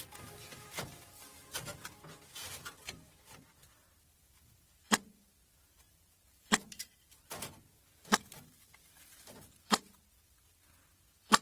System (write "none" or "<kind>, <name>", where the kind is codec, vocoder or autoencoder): none